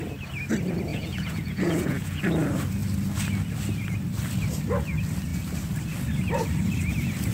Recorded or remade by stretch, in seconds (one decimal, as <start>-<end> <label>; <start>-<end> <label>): 0.0-0.9 recorded; 0.9-2.2 remade; 2.2-7.3 recorded